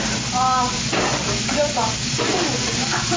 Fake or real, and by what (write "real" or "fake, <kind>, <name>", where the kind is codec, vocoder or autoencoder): real